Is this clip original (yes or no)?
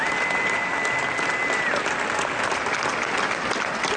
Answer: yes